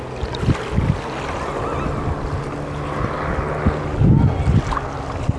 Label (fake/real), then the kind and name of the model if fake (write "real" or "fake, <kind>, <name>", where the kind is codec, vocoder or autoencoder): real